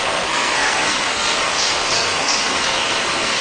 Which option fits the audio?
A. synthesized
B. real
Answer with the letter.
A